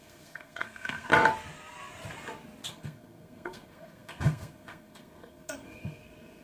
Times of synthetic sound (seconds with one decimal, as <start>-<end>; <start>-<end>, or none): 0.0-1.1; 2.7-6.4